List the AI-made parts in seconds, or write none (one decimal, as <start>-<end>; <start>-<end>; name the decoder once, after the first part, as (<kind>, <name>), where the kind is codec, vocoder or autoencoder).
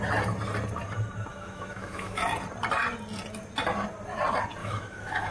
1.3-2.2 (autoencoder, DAC-VAE); 4.6-5.3